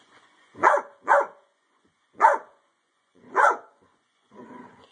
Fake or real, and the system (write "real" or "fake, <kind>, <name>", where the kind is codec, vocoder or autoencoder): fake, vocoder, Vocos